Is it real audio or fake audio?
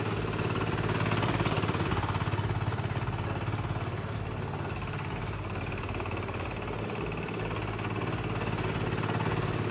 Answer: real